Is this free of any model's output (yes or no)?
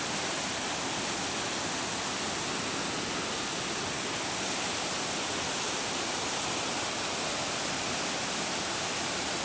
yes